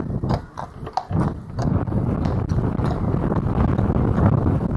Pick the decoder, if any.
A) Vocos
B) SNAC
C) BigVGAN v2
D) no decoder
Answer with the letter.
D